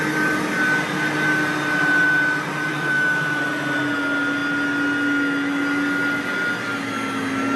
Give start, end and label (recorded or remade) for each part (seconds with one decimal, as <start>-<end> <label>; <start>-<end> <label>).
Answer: 0.0-2.7 recorded; 2.7-3.4 remade; 3.4-7.6 recorded